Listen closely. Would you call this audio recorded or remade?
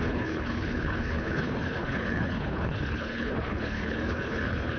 remade